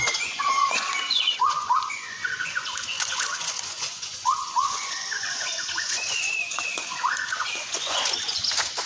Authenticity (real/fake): fake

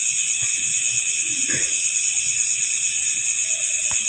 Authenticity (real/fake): fake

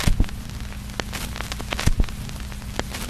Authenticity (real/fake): real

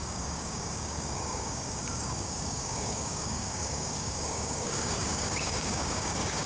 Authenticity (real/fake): fake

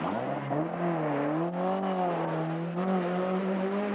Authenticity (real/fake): real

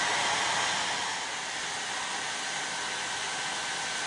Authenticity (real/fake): real